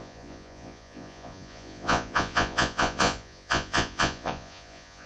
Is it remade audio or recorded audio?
remade